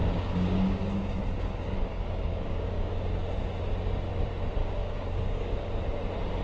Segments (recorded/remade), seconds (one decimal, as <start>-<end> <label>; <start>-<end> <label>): 0.0-2.9 remade; 2.9-4.6 recorded; 4.6-5.7 remade; 5.7-6.4 recorded